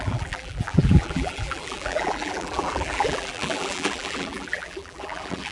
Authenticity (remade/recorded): remade